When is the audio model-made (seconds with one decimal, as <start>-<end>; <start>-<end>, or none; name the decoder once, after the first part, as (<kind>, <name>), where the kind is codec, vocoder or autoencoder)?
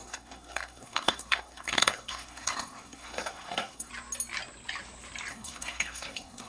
0.0-3.9 (codec, SNAC); 5.3-6.5